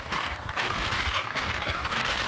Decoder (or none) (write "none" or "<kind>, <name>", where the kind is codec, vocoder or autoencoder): codec, DAC